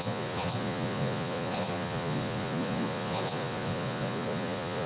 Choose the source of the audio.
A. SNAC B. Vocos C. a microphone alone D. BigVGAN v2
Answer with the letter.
B